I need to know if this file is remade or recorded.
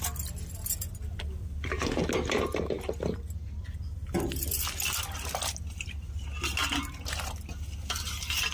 recorded